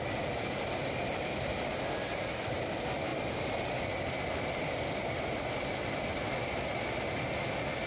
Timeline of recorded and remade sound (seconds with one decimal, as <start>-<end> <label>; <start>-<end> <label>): 0.0-7.9 recorded